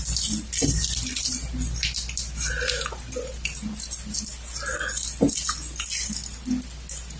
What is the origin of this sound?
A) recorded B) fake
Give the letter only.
A